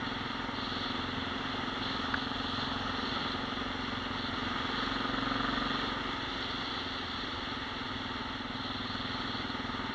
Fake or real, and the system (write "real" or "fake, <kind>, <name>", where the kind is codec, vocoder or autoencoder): real